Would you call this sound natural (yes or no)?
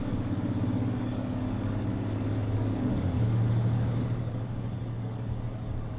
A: no